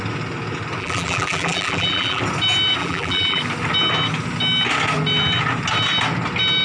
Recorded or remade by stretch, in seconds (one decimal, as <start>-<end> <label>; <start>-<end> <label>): 0.0-0.8 recorded; 0.8-2.2 remade; 2.2-2.8 recorded; 2.8-3.4 remade; 3.4-6.6 recorded